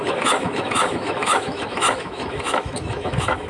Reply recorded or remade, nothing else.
remade